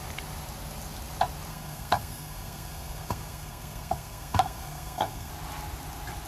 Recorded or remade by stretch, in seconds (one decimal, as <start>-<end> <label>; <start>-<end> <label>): 0.0-1.5 recorded; 1.5-5.3 remade; 5.3-6.3 recorded